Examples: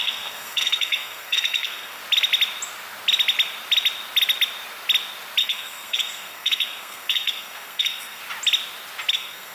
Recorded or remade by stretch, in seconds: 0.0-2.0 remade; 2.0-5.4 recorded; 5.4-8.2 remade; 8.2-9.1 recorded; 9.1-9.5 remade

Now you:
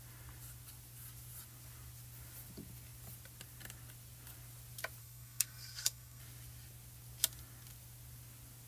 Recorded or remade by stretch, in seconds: 0.0-5.0 recorded; 5.0-6.2 remade; 6.2-8.7 recorded

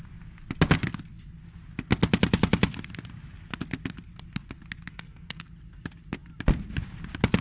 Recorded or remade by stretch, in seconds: 0.0-4.9 recorded; 4.9-5.4 remade; 5.4-7.4 recorded

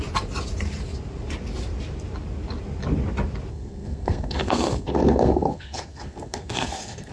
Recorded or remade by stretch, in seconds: 0.0-3.5 recorded; 3.5-7.1 remade